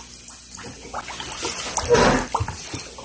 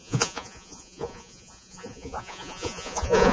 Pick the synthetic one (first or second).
second